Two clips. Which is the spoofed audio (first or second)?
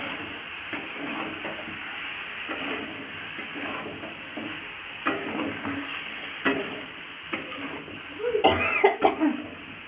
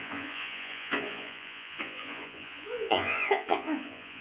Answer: second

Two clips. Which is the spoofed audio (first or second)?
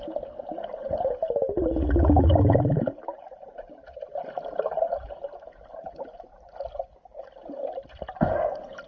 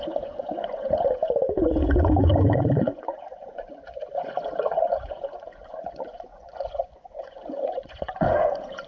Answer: second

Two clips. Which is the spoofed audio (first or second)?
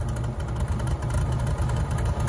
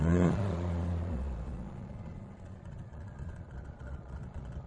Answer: second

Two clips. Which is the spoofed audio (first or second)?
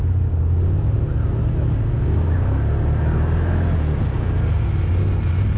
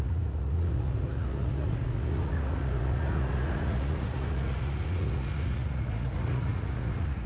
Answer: second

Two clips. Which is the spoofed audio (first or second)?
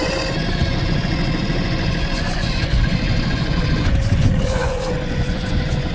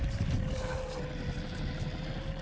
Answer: first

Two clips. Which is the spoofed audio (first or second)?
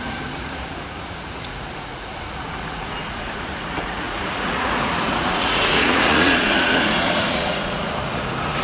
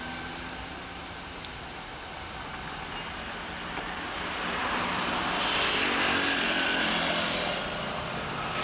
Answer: first